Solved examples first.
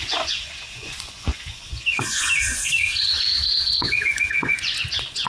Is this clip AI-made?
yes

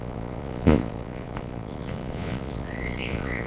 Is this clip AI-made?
yes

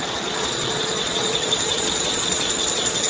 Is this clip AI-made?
yes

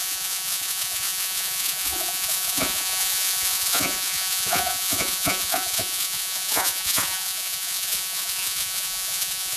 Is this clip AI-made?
yes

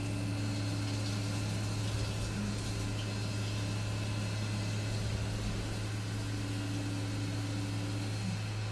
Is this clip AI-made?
no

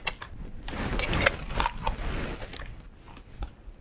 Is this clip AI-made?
no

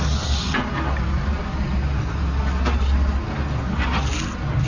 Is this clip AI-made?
no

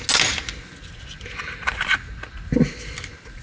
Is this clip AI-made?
no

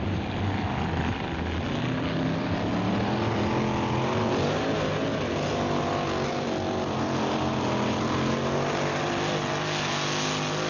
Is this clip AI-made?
no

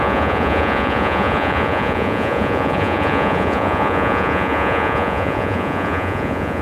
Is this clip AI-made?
yes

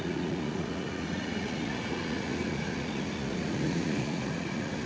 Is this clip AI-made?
yes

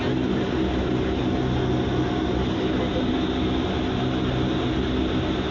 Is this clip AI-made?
no